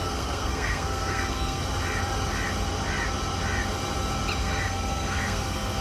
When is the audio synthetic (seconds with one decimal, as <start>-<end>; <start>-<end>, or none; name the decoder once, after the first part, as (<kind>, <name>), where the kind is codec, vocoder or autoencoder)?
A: 0.0-1.6 (codec, SNAC); 4.4-5.8